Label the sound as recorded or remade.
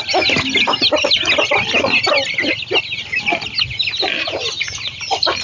recorded